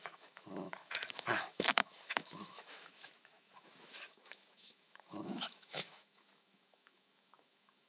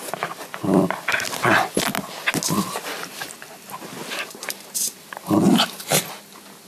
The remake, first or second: first